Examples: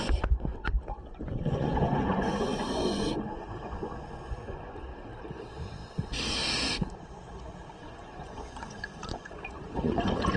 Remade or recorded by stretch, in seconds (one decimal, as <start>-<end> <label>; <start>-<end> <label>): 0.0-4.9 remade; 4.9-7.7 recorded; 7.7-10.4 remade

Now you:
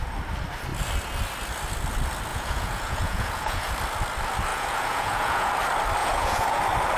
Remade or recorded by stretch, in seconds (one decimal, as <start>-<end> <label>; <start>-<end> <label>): 0.0-2.3 recorded; 2.3-3.7 remade; 3.7-4.5 recorded; 4.5-5.5 remade; 5.5-6.0 recorded; 6.0-6.6 remade; 6.6-7.0 recorded

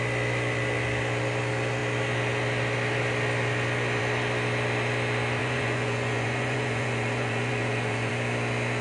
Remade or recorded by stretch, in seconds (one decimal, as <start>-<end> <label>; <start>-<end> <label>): 0.0-5.4 recorded; 5.4-8.1 remade; 8.1-8.8 recorded

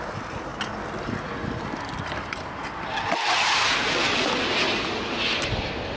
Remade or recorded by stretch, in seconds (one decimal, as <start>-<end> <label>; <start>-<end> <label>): 0.0-6.0 recorded

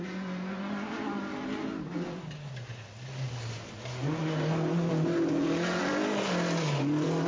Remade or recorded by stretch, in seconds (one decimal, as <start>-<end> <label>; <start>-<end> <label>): 0.0-7.3 recorded